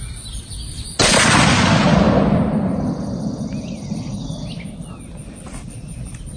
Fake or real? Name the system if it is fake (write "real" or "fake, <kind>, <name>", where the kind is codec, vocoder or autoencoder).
real